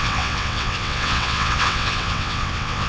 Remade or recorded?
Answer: remade